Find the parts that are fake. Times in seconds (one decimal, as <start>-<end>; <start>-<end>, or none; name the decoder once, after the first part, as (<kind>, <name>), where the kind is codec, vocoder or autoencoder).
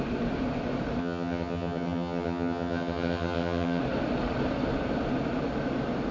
1.0-3.8 (vocoder, HiFi-GAN)